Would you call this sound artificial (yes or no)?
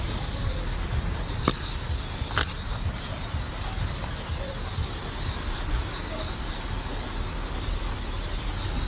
no